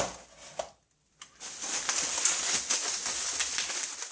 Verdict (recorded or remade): recorded